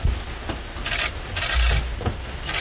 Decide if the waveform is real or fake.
real